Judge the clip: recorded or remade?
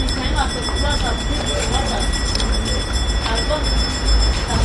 recorded